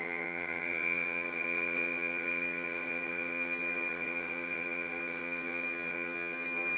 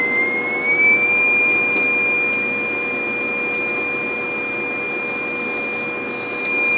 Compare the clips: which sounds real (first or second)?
second